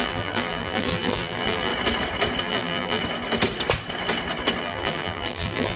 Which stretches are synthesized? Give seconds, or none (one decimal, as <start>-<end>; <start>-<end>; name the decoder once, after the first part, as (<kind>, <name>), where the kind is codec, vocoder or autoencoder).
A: 0.0-1.7 (vocoder, BigVGAN v2); 2.4-3.0; 4.6-5.8